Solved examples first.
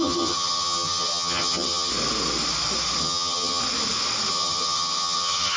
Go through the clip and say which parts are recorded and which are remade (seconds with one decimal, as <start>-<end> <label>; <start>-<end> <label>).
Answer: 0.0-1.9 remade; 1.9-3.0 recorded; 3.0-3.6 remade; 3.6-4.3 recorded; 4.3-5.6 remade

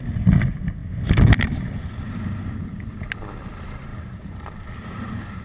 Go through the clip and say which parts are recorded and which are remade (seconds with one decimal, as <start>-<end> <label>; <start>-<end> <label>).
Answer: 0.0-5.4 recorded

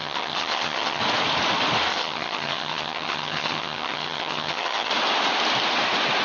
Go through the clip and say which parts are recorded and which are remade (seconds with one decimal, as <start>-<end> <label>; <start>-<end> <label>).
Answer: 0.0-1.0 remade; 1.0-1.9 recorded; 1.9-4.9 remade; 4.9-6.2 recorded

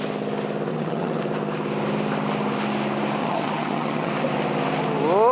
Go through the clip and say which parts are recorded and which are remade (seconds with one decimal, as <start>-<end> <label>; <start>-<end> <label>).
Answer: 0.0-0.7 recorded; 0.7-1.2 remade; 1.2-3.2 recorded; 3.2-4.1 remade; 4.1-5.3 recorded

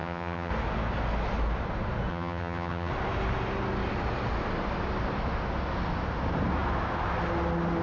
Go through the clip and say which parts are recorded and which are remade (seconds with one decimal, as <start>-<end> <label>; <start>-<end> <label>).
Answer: 0.0-0.5 remade; 0.5-2.1 recorded; 2.1-2.9 remade; 2.9-7.8 recorded

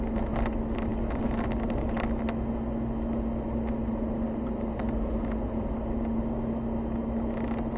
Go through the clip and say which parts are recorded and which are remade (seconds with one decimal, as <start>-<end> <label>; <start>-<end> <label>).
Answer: 0.0-7.8 recorded